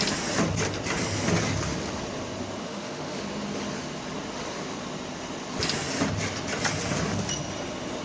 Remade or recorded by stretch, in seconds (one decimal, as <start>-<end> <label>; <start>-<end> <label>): 0.0-2.6 recorded; 2.6-3.2 remade; 3.2-8.0 recorded